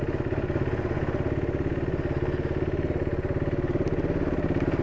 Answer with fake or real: real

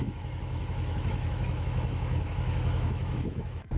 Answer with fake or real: fake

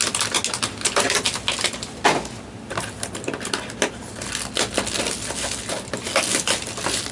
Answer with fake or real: real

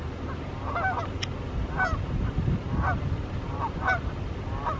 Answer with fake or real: real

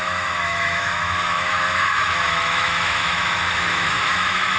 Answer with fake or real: fake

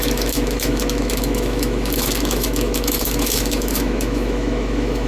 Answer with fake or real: fake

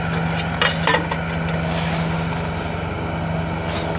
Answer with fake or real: real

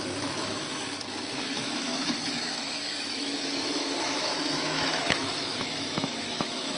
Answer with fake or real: fake